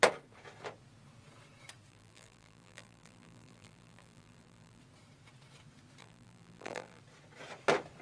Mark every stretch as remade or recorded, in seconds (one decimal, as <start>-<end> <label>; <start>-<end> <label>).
0.0-1.9 recorded; 1.9-4.8 remade; 4.8-6.0 recorded; 6.0-7.0 remade; 7.0-8.0 recorded